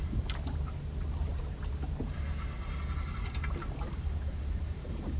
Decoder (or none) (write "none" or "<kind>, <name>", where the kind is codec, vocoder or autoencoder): none